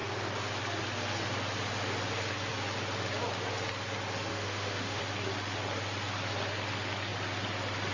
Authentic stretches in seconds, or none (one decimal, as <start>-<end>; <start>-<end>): 0.0-4.3; 5.0-7.9